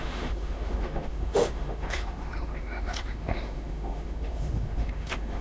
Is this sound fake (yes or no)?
yes